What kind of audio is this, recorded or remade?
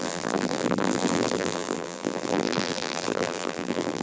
remade